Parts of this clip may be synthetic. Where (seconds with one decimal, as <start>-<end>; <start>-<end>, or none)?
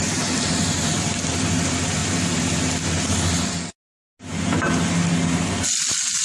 none